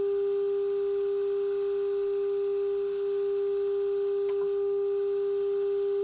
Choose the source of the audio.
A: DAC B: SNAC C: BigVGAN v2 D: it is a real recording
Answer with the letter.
D